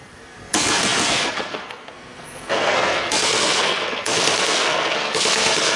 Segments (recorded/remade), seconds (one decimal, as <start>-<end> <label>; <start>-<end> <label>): 0.0-5.8 remade